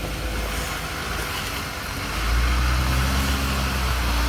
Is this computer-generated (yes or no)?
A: no